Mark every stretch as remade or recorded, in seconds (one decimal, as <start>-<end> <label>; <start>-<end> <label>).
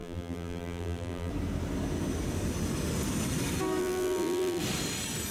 0.0-1.3 remade; 1.3-3.8 recorded; 3.8-4.6 remade; 4.6-5.3 recorded